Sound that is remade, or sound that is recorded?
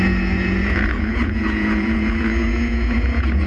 remade